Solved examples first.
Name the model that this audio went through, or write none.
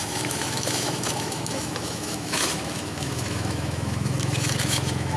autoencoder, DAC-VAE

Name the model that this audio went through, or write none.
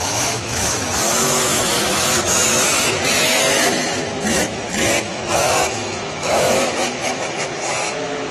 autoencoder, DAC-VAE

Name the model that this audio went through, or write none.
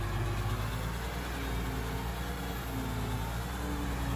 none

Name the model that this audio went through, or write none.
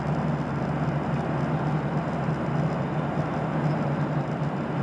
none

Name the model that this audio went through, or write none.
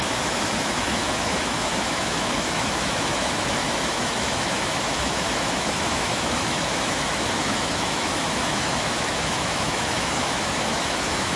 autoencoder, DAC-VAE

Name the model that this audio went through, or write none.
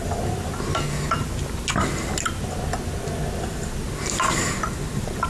none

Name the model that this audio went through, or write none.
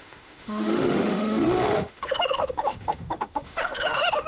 autoencoder, DAC-VAE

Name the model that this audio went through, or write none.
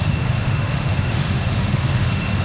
autoencoder, DAC-VAE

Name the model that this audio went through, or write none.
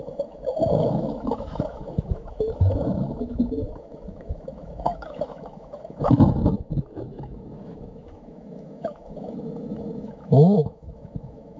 autoencoder, DAC-VAE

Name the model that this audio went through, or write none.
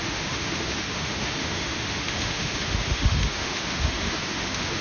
autoencoder, DAC-VAE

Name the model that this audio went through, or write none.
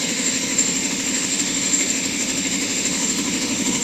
autoencoder, DAC-VAE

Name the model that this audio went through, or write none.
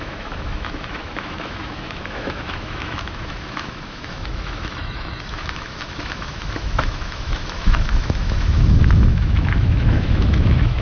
autoencoder, DAC-VAE